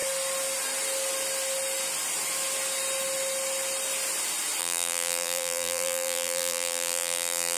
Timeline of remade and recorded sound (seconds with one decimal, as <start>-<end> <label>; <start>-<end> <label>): 0.0-4.6 recorded; 4.6-7.6 remade